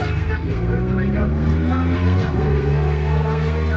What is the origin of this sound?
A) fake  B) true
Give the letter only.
A